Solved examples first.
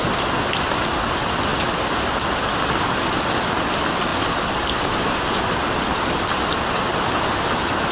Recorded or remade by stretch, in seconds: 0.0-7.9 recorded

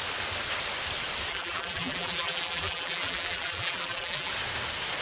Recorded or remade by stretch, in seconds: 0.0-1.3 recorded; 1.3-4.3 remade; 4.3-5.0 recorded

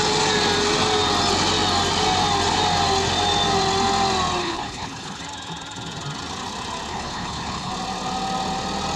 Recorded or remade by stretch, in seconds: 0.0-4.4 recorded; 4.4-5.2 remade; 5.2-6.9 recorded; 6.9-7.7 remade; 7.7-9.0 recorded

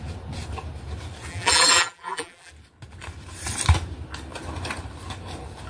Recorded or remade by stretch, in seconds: 0.0-1.3 recorded; 1.3-2.5 remade; 2.5-5.7 recorded

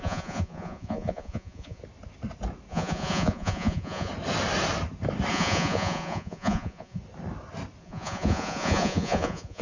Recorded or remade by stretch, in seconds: 0.0-1.8 remade; 1.8-2.7 recorded; 2.7-4.1 remade; 4.1-5.3 recorded; 5.3-7.0 remade; 7.0-7.8 recorded; 7.8-9.6 remade

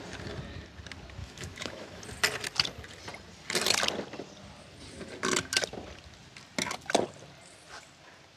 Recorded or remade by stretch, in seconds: 0.0-1.2 recorded; 1.2-2.0 remade; 2.0-8.4 recorded

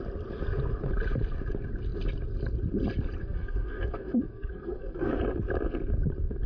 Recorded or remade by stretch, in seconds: 0.0-3.2 recorded; 3.2-5.2 remade; 5.2-6.5 recorded